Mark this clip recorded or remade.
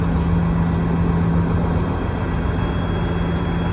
recorded